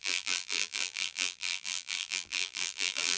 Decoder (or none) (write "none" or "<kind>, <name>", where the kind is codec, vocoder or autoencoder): vocoder, BigVGAN v2